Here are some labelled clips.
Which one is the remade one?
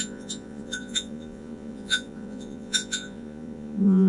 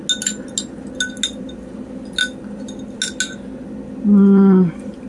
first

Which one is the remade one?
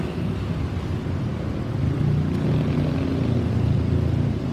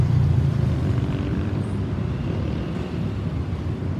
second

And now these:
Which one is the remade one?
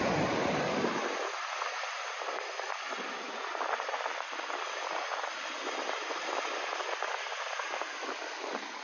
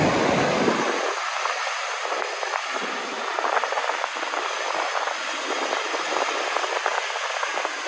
first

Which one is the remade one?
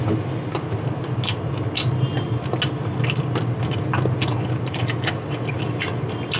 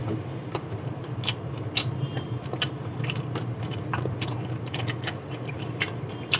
second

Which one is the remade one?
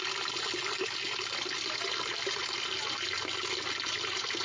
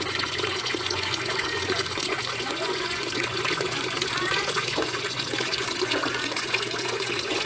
second